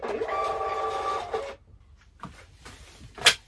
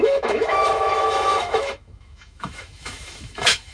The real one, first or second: first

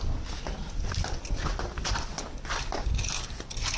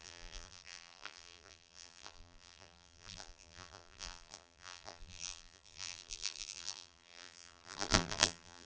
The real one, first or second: first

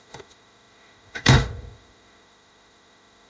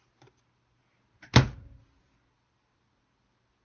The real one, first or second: second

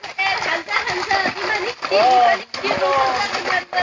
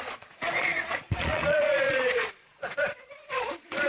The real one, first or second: first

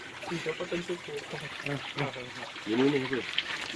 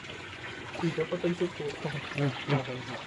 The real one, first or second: first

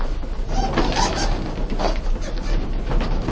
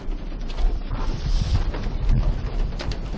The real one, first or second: first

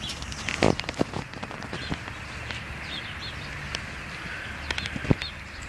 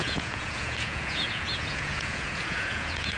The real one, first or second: first